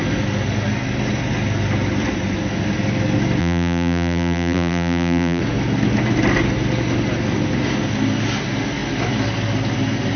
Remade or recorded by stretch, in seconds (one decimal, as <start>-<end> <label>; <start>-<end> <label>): 0.0-3.4 recorded; 3.4-5.4 remade; 5.4-10.2 recorded